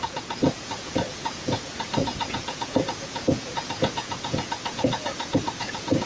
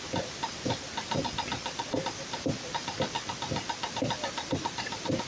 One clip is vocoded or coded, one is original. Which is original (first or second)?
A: second